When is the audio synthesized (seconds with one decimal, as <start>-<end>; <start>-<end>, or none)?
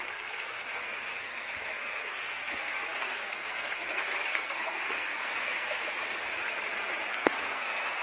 0.0-5.8; 7.1-8.0